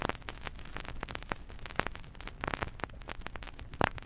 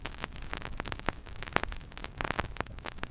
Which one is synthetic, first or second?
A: second